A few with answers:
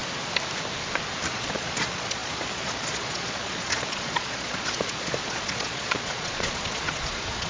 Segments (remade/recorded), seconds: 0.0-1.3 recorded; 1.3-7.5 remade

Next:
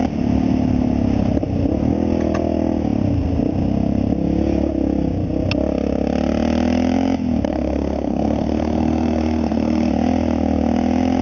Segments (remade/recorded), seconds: 0.0-7.5 recorded; 7.5-9.9 remade; 9.9-11.2 recorded